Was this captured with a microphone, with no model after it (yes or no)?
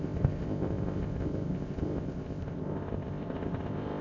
no